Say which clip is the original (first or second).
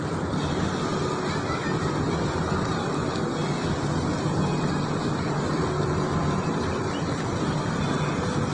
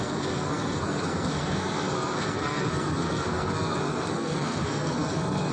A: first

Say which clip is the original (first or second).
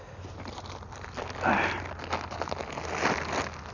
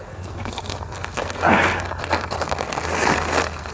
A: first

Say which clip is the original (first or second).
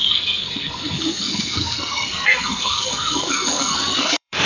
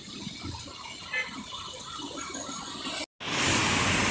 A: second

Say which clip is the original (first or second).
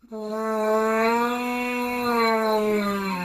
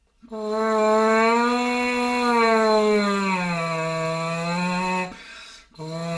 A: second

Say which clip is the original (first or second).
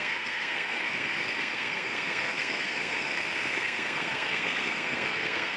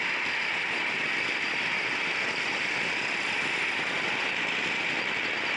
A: second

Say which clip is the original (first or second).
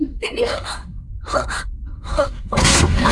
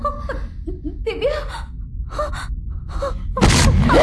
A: second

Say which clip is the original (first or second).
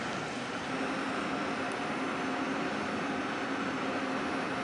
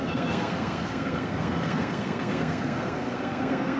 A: first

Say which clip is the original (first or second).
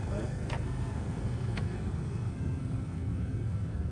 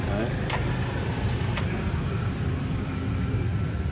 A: second